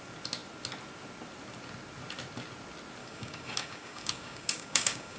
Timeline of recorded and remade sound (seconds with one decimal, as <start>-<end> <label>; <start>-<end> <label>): 0.0-3.0 recorded; 3.0-5.2 remade